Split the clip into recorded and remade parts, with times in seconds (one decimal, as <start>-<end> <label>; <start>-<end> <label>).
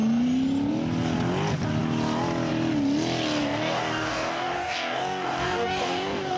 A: 0.0-3.4 recorded; 3.4-6.4 remade